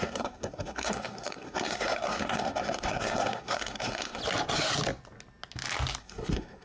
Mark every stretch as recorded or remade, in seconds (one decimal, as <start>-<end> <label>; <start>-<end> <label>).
0.0-4.2 remade; 4.2-6.0 recorded; 6.0-6.6 remade